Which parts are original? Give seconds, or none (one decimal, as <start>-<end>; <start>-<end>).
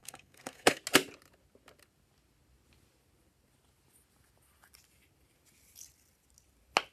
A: 0.8-6.9